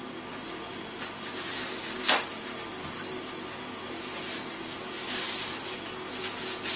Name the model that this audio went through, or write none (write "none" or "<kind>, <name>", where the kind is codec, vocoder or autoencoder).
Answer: none